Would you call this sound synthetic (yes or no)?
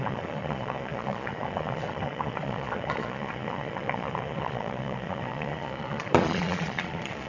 yes